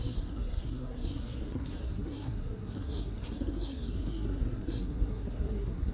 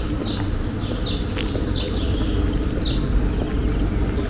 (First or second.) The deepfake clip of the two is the first